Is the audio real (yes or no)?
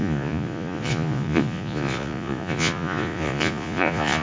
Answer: no